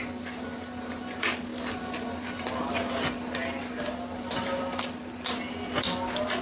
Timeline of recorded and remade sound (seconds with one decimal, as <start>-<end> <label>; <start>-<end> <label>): 0.0-6.4 recorded